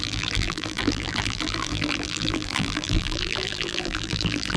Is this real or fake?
fake